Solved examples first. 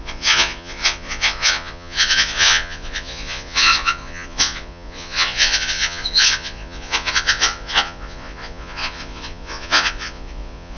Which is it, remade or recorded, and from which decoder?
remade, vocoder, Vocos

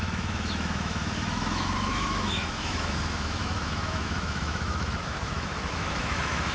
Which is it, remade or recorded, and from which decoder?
remade, autoencoder, DAC-VAE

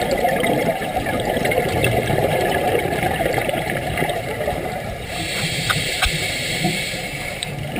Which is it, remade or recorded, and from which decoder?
remade, vocoder, BigVGAN v2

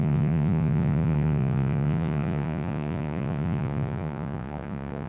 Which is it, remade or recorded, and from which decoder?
remade, vocoder, Vocos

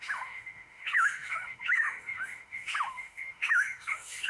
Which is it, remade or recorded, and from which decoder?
remade, autoencoder, DAC-VAE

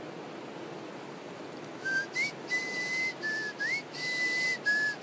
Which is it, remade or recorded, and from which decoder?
recorded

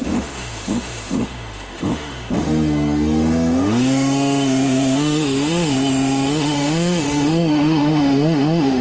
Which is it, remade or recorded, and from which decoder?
remade, autoencoder, DAC-VAE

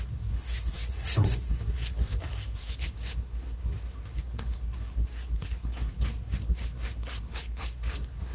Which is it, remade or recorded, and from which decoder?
remade, codec, SNAC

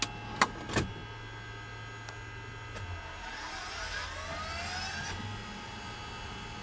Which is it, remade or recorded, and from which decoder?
recorded